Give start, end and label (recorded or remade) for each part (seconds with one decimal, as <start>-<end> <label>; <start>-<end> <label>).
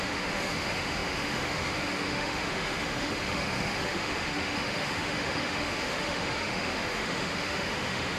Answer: 0.0-8.2 remade